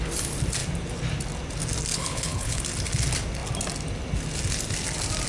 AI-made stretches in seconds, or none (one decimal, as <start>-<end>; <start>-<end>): 1.9-2.6